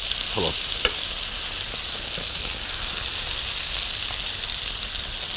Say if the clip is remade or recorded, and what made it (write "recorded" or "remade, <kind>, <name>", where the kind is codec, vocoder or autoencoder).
recorded